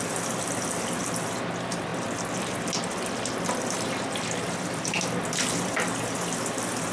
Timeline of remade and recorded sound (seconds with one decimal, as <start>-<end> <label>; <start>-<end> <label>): 0.0-6.9 recorded